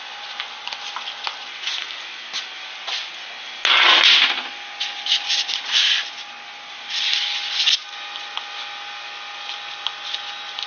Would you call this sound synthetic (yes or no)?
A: no